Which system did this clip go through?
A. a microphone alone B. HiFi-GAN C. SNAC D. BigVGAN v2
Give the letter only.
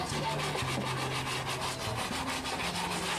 A